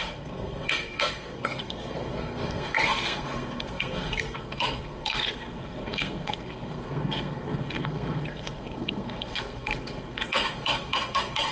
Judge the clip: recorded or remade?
remade